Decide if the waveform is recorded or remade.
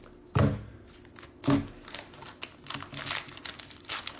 recorded